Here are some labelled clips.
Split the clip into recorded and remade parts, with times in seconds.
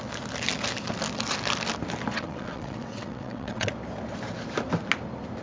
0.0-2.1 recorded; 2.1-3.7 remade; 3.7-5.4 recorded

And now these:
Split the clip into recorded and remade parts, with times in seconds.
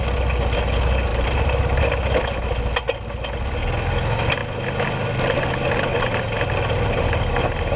0.0-1.1 recorded; 1.1-1.8 remade; 1.8-7.8 recorded